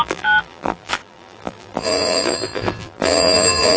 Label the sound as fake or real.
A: fake